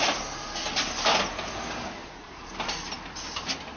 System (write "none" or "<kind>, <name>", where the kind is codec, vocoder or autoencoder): none